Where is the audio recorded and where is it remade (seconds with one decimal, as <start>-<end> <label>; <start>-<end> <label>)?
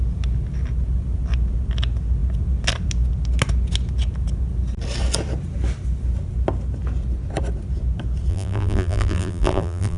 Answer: 0.0-8.3 recorded; 8.3-10.0 remade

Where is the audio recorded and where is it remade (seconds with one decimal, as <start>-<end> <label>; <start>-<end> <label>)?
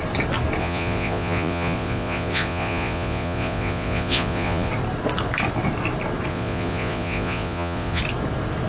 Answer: 0.0-0.6 recorded; 0.6-4.7 remade; 4.7-6.3 recorded; 6.3-8.0 remade; 8.0-8.7 recorded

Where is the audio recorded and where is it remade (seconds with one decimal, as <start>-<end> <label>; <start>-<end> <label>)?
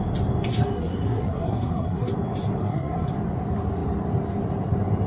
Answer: 0.0-0.5 recorded; 0.5-2.1 remade; 2.1-2.6 recorded; 2.6-3.1 remade; 3.1-5.1 recorded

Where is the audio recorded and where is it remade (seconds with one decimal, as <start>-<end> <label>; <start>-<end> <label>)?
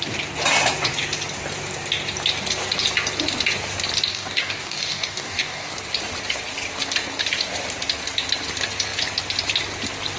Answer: 0.0-4.1 recorded; 4.1-5.7 remade; 5.7-10.2 recorded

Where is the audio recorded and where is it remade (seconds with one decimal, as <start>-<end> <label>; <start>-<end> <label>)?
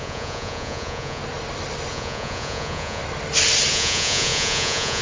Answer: 0.0-1.2 remade; 1.2-1.9 recorded; 1.9-3.0 remade; 3.0-3.7 recorded; 3.7-5.0 remade